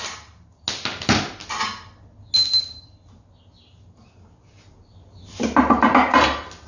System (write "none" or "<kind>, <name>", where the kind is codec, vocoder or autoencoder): none